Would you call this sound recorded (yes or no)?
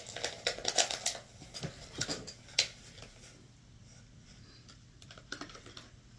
yes